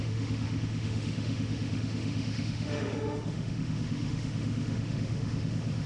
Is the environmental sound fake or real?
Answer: fake